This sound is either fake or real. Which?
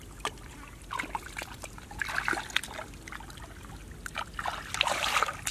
real